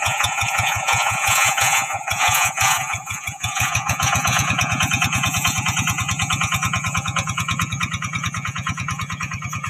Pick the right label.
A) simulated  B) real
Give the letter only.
A